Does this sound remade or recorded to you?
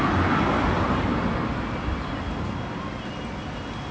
recorded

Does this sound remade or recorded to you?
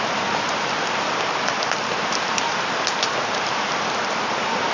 recorded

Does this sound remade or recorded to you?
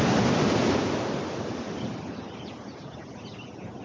recorded